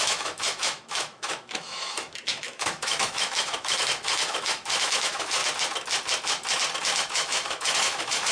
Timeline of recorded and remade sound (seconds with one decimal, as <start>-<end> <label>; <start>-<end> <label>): 0.0-5.4 remade; 5.4-6.8 recorded; 6.8-8.3 remade